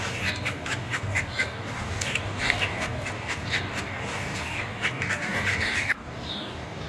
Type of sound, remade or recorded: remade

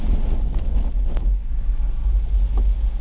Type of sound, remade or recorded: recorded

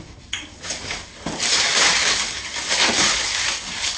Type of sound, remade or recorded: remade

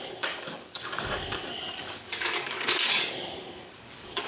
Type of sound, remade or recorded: remade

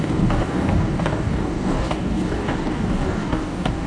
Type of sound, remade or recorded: remade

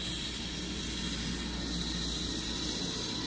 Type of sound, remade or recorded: recorded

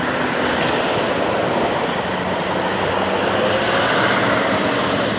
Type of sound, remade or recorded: recorded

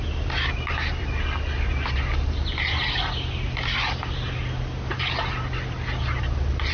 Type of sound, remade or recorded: recorded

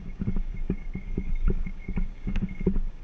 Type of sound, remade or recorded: remade